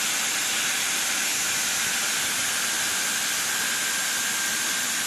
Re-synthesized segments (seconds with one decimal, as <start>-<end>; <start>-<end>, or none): 0.0-1.3; 2.5-5.1